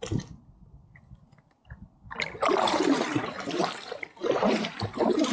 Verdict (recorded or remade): recorded